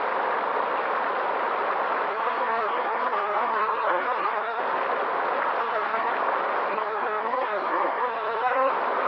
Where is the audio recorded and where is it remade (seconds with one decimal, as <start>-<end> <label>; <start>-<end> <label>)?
0.0-2.1 recorded; 2.1-4.6 remade; 4.6-5.6 recorded; 5.6-6.1 remade; 6.1-6.7 recorded; 6.7-8.7 remade; 8.7-9.1 recorded